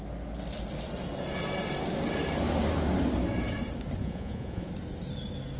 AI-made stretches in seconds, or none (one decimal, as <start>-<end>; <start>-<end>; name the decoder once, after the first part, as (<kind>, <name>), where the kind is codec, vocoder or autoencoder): 4.0-4.7 (vocoder, Vocos)